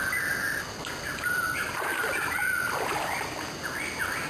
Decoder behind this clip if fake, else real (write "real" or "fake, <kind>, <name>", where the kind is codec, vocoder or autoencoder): real